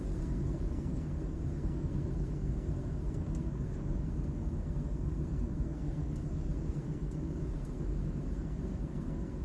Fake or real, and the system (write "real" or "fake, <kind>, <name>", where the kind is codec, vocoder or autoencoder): fake, codec, SNAC